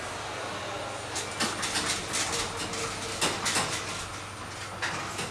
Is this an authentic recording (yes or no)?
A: yes